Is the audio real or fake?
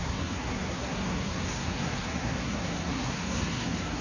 fake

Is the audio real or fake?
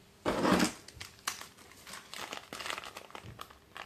real